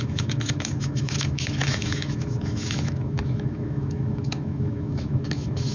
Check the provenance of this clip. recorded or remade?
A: remade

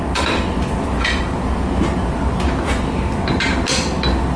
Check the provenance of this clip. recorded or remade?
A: recorded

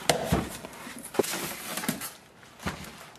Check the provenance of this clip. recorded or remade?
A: recorded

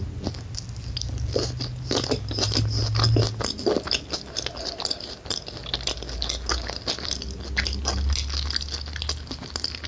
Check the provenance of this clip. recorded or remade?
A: recorded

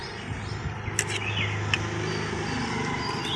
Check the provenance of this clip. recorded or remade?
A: recorded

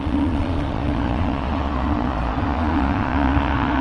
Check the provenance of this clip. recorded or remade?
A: remade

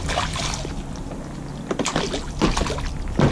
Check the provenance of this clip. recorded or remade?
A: recorded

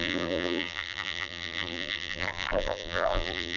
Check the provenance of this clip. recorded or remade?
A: remade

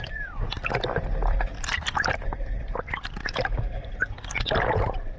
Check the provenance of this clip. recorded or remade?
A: remade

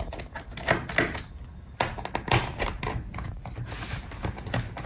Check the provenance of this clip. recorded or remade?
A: recorded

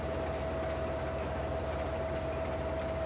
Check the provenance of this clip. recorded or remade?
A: recorded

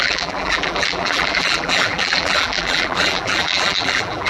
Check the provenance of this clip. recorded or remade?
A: remade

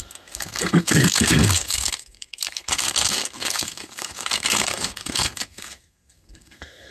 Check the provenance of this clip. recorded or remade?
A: remade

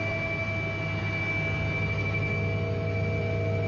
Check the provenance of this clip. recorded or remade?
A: recorded